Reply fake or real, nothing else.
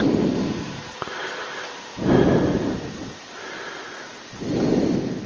real